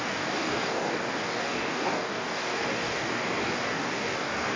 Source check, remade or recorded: remade